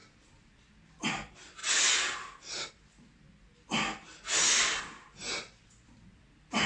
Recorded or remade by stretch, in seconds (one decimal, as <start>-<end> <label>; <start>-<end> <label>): 0.0-6.7 recorded

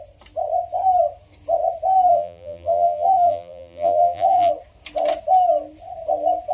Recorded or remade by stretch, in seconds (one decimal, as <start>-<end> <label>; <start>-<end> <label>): 0.0-2.1 recorded; 2.1-4.5 remade; 4.5-6.5 recorded

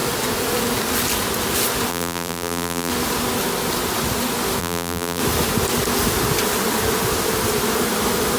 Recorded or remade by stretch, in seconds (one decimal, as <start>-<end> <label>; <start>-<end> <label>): 0.0-1.9 recorded; 1.9-2.9 remade; 2.9-4.6 recorded; 4.6-5.2 remade; 5.2-8.4 recorded

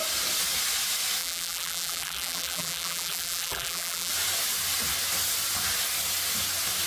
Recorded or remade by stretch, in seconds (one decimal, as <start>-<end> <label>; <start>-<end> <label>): 0.0-1.2 recorded; 1.2-4.1 remade; 4.1-6.9 recorded

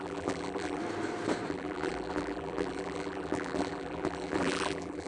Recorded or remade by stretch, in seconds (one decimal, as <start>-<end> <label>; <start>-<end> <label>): 0.0-0.8 remade; 0.8-1.5 recorded; 1.5-5.1 remade

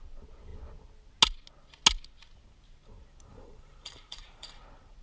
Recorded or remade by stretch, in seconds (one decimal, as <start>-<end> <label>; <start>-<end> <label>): 0.0-3.3 recorded; 3.3-4.6 remade; 4.6-5.0 recorded